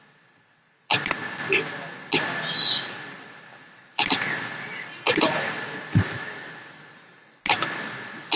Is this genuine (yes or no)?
yes